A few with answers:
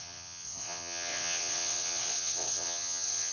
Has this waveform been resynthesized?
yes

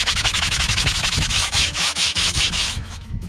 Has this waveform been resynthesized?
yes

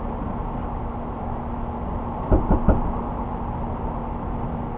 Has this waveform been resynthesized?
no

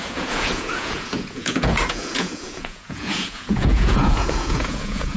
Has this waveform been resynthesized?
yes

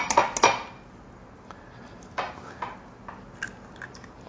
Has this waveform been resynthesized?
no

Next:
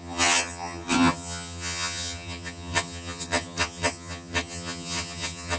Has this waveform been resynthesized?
yes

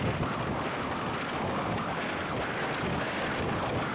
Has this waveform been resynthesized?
no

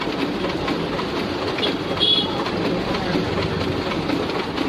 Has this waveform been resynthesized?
yes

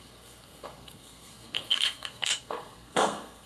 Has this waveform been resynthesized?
yes